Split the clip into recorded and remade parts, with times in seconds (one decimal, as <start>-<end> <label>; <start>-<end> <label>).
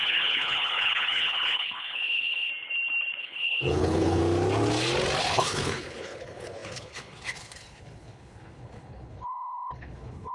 0.0-2.5 remade; 2.5-3.2 recorded; 3.2-4.2 remade; 4.2-5.2 recorded; 5.2-10.3 remade